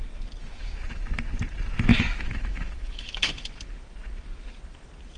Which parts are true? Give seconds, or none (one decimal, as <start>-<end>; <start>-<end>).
0.0-0.4; 1.1-1.9; 3.3-5.2